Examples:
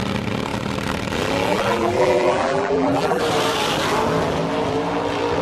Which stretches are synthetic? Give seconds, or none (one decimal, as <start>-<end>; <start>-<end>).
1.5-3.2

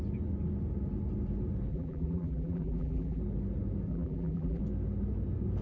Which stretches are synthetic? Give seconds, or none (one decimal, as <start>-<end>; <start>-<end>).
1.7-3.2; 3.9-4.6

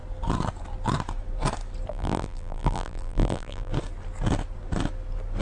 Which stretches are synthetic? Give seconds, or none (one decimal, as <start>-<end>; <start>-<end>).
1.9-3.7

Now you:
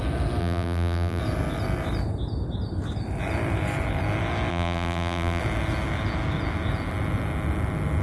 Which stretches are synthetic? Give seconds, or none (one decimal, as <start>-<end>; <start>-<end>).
0.4-1.2; 4.5-5.4

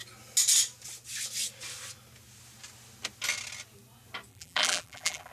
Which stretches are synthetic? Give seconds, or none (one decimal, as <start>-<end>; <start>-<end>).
4.3-5.3